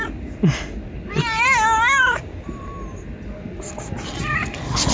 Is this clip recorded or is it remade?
recorded